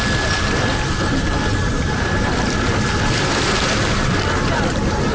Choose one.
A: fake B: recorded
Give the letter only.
A